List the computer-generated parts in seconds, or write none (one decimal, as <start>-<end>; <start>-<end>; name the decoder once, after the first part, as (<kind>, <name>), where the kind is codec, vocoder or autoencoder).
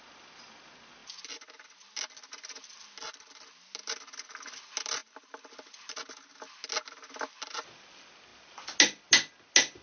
5.0-5.5 (vocoder, BigVGAN v2)